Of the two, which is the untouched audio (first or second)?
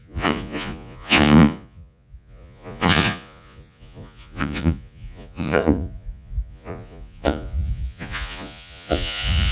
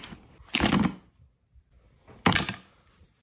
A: second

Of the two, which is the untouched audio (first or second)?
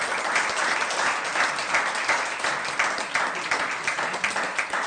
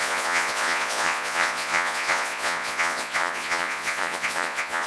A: first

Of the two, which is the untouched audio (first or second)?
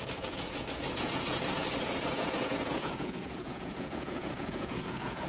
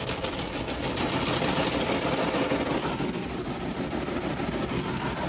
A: second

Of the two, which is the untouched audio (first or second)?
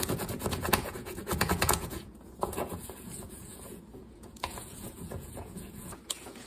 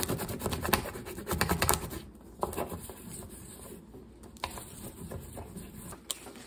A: second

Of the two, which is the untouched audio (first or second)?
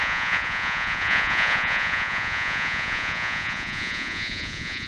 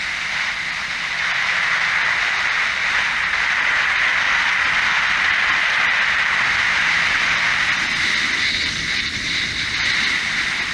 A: second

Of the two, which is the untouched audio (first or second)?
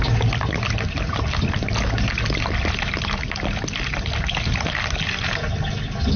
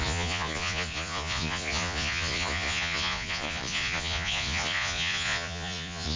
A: first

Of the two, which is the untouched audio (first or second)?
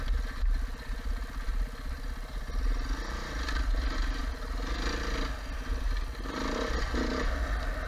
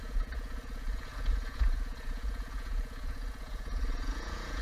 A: first